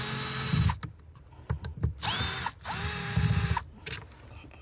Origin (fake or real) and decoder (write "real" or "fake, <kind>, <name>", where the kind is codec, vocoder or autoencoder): real